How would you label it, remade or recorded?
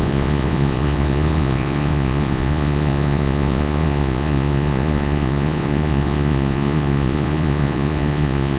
remade